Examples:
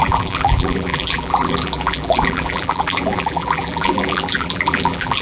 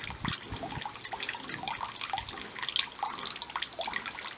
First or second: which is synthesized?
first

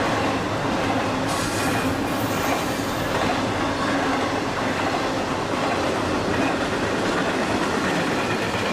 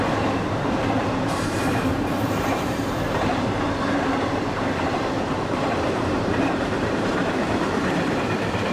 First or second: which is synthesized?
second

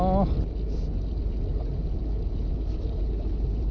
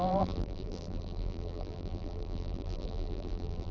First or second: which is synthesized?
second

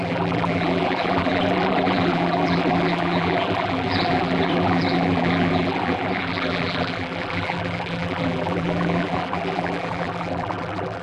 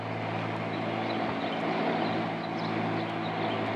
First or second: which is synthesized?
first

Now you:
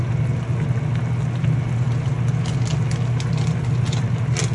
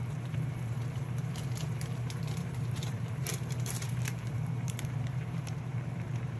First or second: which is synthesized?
second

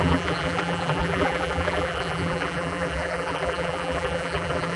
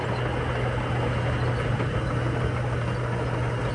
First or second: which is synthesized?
first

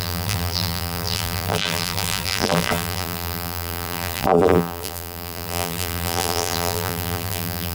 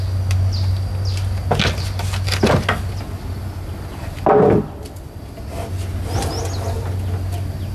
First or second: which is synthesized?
first